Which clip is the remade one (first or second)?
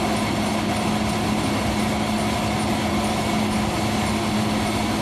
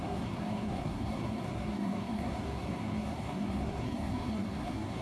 second